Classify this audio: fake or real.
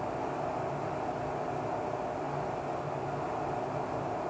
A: real